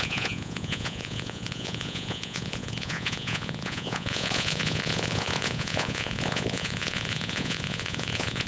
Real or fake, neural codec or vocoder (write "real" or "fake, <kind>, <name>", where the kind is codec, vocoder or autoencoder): fake, vocoder, Vocos